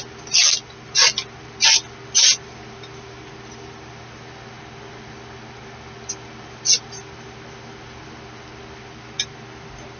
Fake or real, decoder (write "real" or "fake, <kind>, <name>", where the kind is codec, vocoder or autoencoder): real